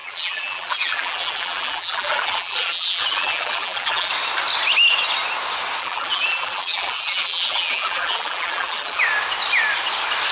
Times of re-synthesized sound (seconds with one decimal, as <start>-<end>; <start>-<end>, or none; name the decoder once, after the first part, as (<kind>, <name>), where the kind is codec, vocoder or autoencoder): 0.0-4.1 (vocoder, BigVGAN v2); 5.8-9.0

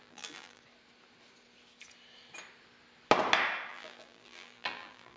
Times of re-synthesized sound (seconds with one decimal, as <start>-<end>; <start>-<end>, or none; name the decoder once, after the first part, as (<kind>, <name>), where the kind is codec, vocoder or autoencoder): 0.0-0.6 (vocoder, BigVGAN v2); 3.7-5.2

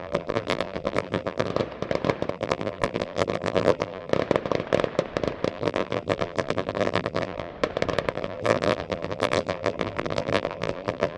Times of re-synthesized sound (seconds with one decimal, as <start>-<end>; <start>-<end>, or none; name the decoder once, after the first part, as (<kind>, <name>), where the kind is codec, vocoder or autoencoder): 0.0-1.5 (vocoder, BigVGAN v2); 2.3-4.1; 5.5-7.5; 8.1-11.2